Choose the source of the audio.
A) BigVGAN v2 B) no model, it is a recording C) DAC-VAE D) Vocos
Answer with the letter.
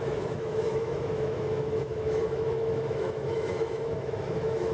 C